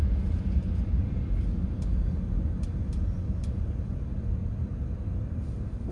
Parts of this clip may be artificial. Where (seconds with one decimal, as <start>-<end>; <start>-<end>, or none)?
none